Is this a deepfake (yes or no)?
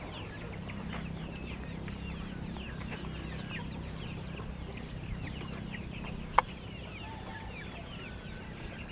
no